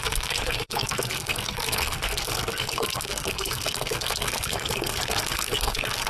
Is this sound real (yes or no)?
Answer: no